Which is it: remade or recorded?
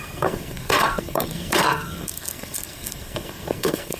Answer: remade